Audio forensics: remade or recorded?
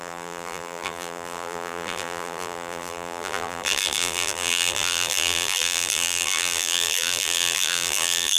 remade